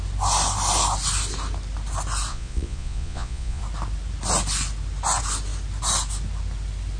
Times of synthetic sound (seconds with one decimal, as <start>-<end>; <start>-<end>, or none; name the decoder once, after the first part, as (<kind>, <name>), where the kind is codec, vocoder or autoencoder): 2.3-3.6 (vocoder, Vocos)